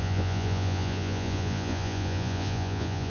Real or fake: fake